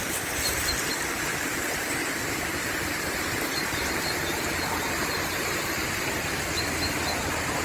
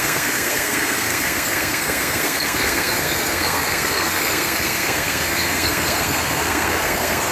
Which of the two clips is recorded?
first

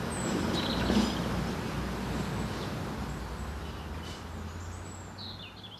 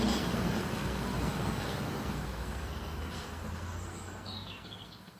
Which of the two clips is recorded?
first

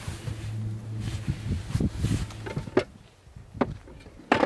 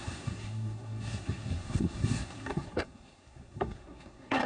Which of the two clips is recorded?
first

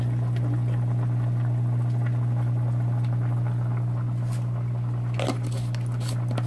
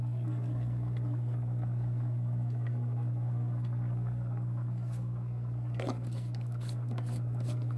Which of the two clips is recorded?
first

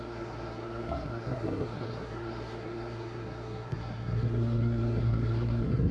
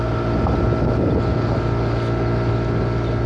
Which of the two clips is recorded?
second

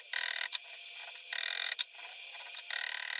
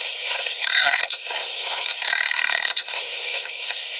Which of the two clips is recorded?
first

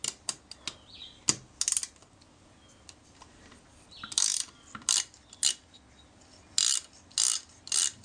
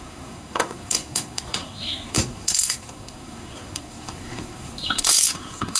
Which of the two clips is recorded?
first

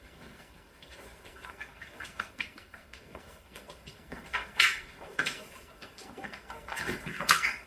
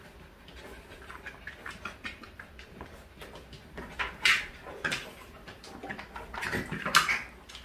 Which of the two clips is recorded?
second